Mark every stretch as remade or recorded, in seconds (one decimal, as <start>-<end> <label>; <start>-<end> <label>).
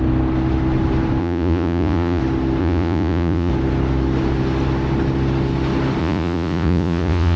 0.0-1.2 recorded; 1.2-2.2 remade; 2.2-2.6 recorded; 2.6-3.5 remade; 3.5-6.0 recorded; 6.0-7.4 remade